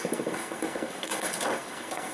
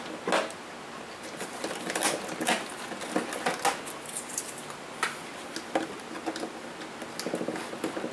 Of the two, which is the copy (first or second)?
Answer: first